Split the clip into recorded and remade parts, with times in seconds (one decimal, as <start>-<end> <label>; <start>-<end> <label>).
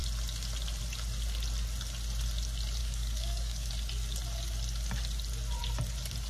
0.0-2.8 recorded; 2.8-3.7 remade; 3.7-6.3 recorded